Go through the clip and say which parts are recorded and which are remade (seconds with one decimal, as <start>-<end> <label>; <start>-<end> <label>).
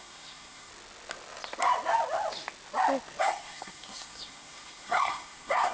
0.0-0.7 remade; 0.7-3.2 recorded; 3.2-5.7 remade